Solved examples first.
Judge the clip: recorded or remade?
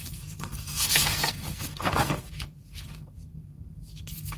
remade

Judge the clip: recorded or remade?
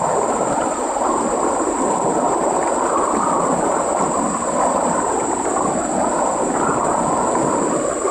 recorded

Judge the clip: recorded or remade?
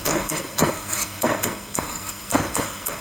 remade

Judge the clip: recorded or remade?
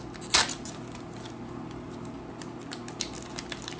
recorded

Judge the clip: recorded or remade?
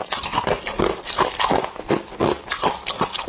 recorded